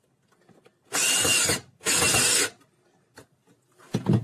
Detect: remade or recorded recorded